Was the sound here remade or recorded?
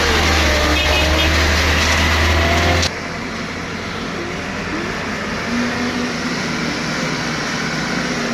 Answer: recorded